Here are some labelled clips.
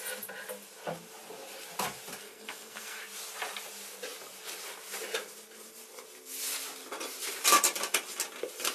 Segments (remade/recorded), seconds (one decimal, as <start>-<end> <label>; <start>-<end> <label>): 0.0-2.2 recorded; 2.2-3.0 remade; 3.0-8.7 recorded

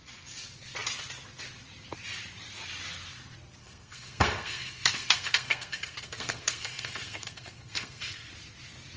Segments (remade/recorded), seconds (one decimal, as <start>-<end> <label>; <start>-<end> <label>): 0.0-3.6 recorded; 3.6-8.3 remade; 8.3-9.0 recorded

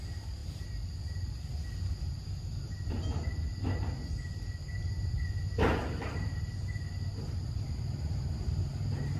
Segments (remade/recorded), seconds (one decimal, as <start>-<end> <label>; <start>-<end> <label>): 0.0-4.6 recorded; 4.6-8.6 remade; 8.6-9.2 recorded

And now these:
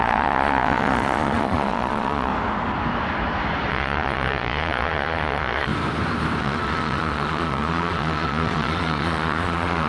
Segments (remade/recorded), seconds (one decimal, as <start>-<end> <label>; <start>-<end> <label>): 0.0-2.3 remade; 2.3-3.7 recorded; 3.7-5.7 remade; 5.7-6.4 recorded; 6.4-9.9 remade